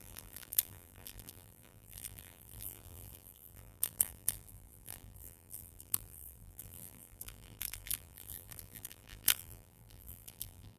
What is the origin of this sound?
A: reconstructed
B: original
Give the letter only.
A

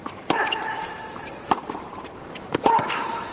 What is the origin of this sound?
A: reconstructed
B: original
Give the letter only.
A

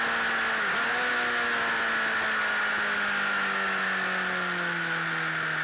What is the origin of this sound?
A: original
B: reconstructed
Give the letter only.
A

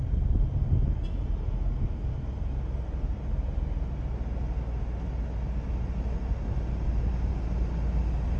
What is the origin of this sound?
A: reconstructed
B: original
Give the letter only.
B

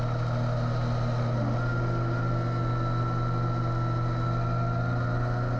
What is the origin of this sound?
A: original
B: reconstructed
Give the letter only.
A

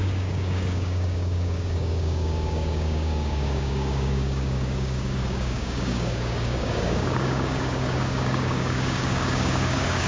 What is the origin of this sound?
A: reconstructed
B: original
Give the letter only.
A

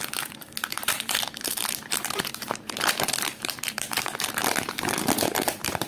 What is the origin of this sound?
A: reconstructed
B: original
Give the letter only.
A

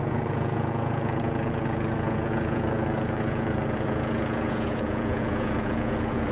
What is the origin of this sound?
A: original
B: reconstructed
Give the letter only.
B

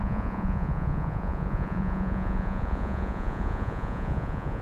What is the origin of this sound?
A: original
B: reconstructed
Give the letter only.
B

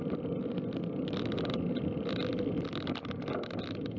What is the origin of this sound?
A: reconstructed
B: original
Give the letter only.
B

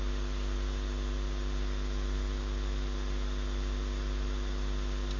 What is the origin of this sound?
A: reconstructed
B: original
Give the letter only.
B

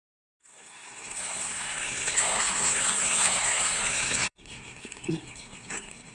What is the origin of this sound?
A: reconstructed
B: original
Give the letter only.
A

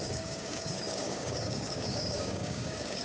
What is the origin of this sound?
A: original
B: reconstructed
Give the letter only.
B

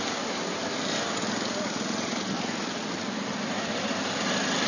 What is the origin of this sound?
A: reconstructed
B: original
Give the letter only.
B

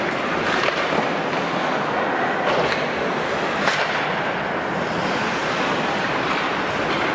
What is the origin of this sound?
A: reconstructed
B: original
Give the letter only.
A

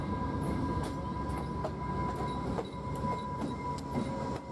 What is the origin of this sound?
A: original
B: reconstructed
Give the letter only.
A